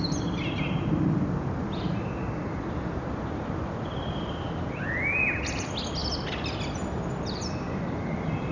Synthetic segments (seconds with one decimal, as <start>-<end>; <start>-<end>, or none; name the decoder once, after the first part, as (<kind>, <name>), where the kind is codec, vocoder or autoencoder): none